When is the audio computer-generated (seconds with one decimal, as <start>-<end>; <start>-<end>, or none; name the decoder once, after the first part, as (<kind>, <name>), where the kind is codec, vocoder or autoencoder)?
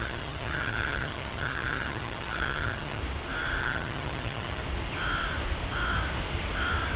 0.0-3.0 (vocoder, HiFi-GAN); 3.6-4.6